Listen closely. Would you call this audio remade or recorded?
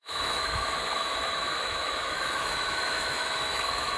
remade